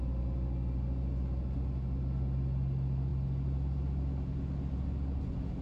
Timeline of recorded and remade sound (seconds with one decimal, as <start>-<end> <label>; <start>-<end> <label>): 0.0-5.6 recorded

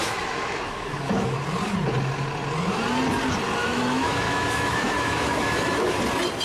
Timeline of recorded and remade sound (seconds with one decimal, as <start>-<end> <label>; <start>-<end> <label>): 0.0-1.4 remade; 1.4-3.6 recorded; 3.6-6.0 remade; 6.0-6.4 recorded